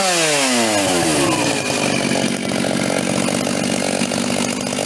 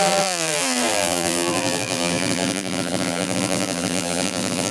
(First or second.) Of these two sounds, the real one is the first